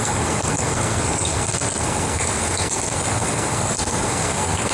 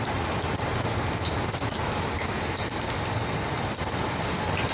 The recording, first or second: second